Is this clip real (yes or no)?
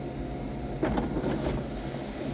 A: yes